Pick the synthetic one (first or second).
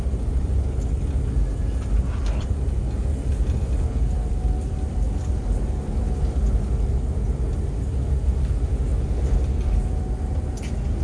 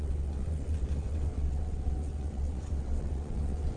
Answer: second